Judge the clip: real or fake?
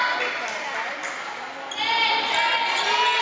real